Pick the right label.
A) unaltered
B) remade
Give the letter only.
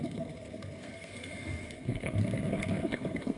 B